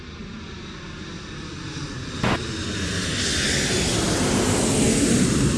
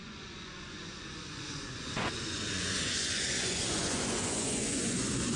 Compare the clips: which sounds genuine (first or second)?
first